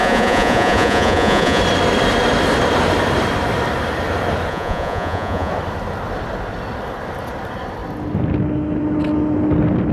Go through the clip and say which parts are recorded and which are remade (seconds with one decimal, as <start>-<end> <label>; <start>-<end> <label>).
0.0-1.6 remade; 1.6-4.5 recorded; 4.5-5.5 remade; 5.5-9.9 recorded